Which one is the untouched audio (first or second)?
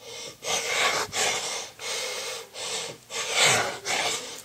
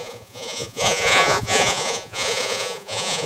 first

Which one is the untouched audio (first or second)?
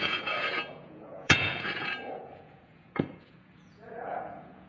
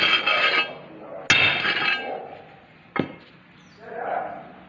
second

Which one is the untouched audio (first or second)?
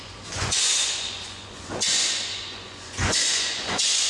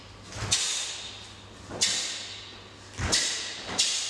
second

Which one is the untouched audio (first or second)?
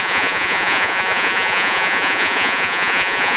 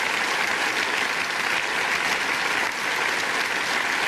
second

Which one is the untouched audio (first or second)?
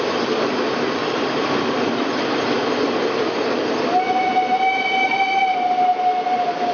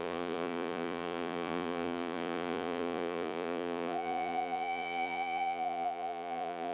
first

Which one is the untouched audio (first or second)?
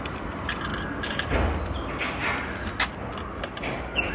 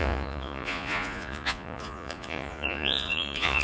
first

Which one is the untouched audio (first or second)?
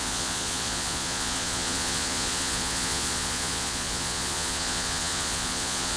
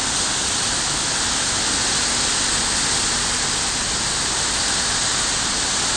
second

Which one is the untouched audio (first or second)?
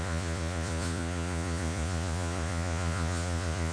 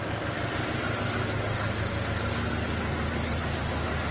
second